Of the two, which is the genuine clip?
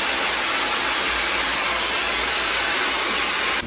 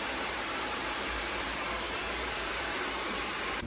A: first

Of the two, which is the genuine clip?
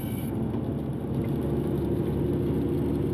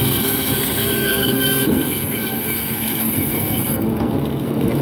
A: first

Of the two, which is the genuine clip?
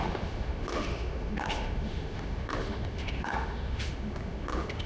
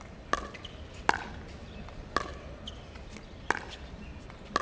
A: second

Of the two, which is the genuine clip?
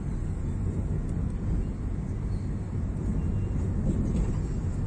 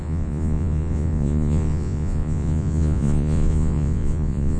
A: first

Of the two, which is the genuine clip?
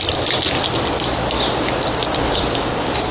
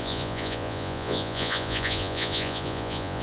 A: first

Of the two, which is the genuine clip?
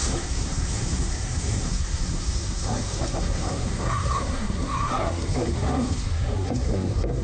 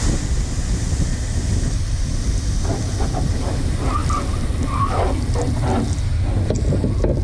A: second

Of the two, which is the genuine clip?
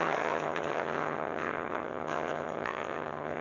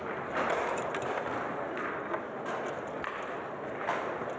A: second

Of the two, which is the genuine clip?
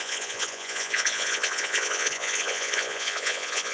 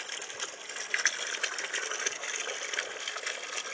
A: second